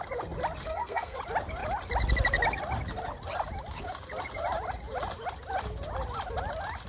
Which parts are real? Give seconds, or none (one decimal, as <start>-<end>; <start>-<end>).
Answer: 0.0-0.7; 1.2-6.9